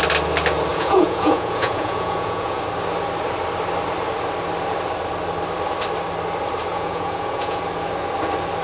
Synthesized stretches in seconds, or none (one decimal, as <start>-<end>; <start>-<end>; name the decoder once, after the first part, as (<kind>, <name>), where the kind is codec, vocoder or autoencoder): 0.7-2.6 (vocoder, Vocos); 6.7-7.6